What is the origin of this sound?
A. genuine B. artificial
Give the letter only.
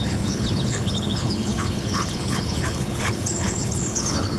B